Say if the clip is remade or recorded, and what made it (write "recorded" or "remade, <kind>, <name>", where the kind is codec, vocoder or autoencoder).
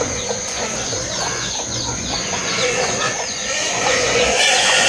remade, vocoder, Vocos